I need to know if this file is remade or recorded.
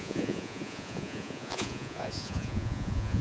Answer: remade